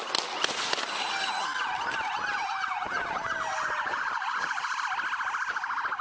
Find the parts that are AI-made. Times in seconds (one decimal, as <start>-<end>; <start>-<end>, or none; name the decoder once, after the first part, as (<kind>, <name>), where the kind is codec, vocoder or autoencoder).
3.5-4.8 (vocoder, Vocos)